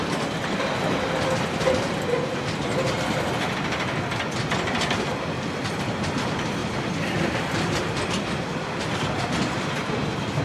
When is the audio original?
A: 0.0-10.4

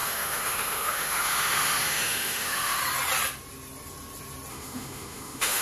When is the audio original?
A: 2.8-4.5

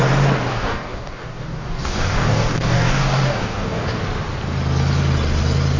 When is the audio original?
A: 0.0-0.5; 4.0-5.8

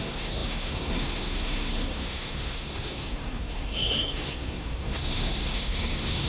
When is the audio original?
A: none

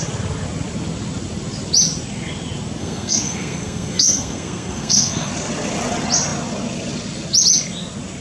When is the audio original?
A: 0.0-2.8; 5.3-8.2

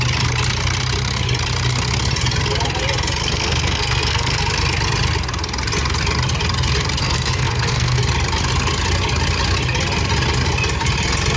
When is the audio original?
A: 0.0-3.2; 4.4-7.0; 8.0-11.4

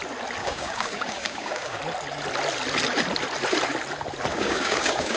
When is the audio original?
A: 0.0-0.4; 1.8-4.3

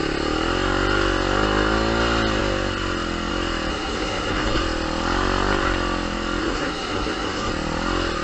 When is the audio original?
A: 0.0-3.7; 4.6-6.4; 7.5-8.2